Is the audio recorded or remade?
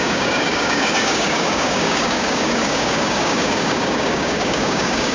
remade